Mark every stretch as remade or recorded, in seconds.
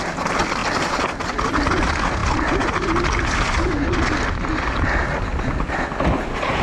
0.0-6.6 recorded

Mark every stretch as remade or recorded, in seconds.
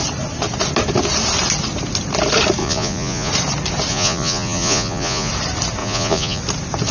0.0-2.6 recorded; 2.6-3.3 remade; 3.3-3.9 recorded; 3.9-5.3 remade; 5.3-5.8 recorded; 5.8-6.4 remade; 6.4-6.9 recorded